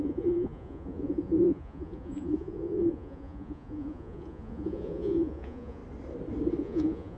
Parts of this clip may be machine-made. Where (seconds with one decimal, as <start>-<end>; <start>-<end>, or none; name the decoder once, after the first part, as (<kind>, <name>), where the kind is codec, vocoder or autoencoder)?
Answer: 0.0-5.8 (vocoder, Vocos); 6.6-7.2